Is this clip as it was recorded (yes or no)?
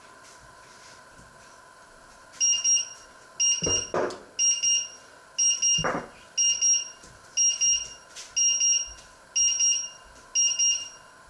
yes